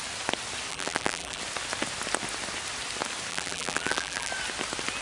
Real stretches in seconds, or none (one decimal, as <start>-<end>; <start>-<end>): 0.0-0.7; 1.4-3.3; 4.3-5.0